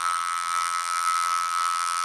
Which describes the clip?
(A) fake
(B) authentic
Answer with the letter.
A